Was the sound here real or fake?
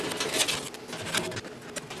real